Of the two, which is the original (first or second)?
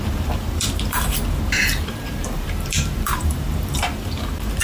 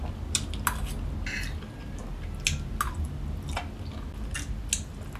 second